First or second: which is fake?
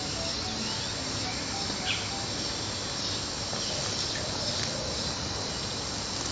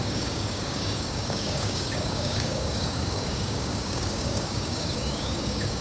second